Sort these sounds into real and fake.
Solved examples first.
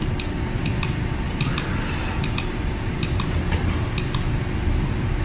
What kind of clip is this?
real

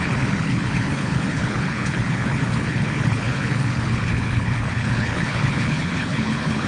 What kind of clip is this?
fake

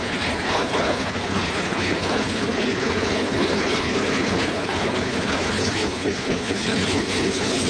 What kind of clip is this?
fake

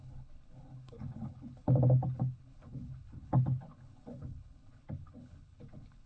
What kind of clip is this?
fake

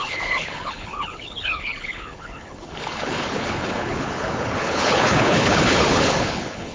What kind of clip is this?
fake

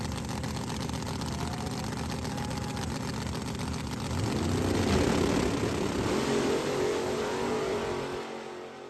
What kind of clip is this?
real